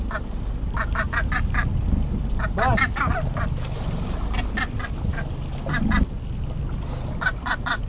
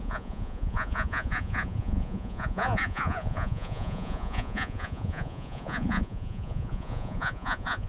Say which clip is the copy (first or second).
second